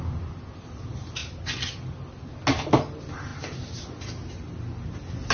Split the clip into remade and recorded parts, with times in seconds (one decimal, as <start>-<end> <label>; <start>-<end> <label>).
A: 0.0-5.3 recorded